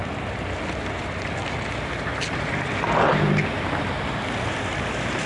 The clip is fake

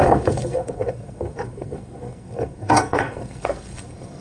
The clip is fake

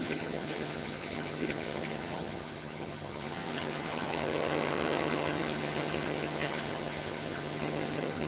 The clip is fake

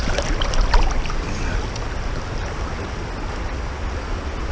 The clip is real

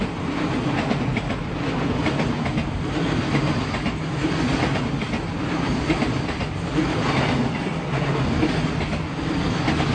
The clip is real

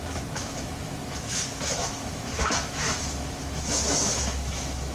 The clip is fake